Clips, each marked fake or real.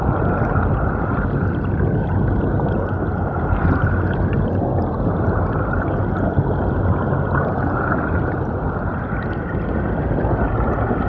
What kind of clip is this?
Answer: real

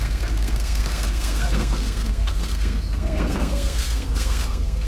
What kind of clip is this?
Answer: fake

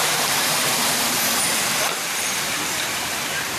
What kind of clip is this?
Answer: fake